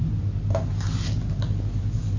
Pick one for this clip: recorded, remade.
recorded